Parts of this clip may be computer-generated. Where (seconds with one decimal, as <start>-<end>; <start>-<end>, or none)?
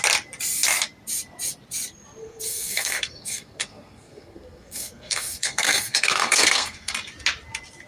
2.2-6.9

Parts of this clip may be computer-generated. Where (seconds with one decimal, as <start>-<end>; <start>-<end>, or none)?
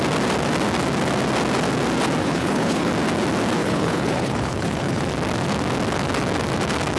2.2-2.9; 3.6-5.0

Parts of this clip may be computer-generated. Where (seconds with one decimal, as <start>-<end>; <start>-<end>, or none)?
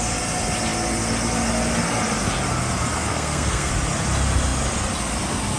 3.1-3.7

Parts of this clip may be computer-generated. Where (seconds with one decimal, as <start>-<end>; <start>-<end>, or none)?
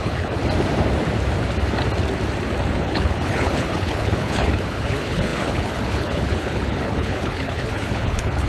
0.0-0.4; 2.7-8.5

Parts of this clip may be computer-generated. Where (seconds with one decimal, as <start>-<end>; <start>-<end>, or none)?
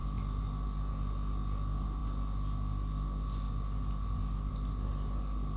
none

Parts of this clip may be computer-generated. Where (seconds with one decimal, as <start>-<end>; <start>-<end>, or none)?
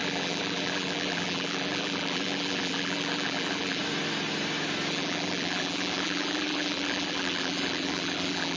0.0-3.8; 4.9-8.6